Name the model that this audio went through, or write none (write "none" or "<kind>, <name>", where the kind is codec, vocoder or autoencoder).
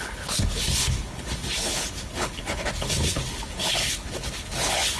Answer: codec, HILCodec